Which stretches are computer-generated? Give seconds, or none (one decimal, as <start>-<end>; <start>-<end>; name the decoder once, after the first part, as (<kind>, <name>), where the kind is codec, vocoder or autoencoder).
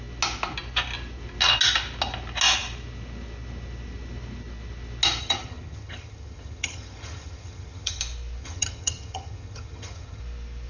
5.2-8.0 (vocoder, HiFi-GAN); 8.4-10.2